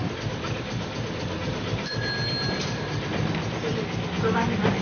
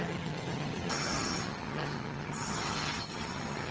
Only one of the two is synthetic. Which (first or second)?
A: second